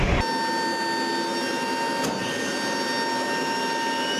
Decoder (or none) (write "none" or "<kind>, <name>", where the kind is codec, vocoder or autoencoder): none